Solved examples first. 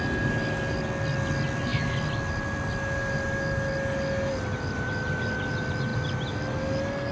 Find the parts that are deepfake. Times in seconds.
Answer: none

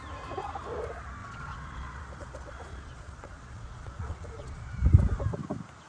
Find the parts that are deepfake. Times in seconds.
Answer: 1.2-4.7 (vocoder, Vocos)

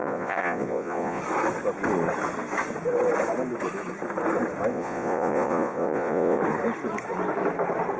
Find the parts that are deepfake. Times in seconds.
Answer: 0.0-1.2 (vocoder, Vocos); 4.7-6.4

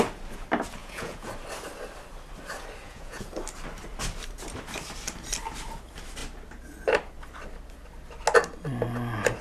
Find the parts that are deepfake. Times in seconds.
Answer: 0.8-1.3 (vocoder, Vocos); 2.8-3.3